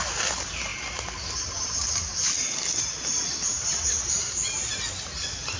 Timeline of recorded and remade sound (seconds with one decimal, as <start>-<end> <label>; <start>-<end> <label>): 0.0-5.6 recorded